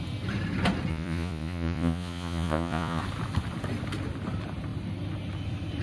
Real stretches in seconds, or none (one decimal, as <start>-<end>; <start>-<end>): 0.0-0.9; 3.0-5.8